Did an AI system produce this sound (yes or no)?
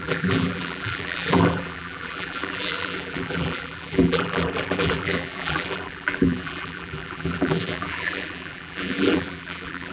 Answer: yes